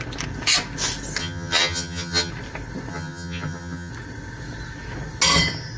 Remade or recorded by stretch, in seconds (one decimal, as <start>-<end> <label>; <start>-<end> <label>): 0.0-1.2 recorded; 1.2-2.3 remade; 2.3-2.9 recorded; 2.9-3.9 remade; 3.9-5.8 recorded